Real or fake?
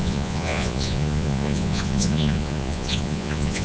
fake